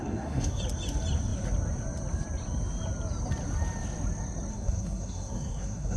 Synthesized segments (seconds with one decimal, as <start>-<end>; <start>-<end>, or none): 0.0-0.6; 4.5-6.0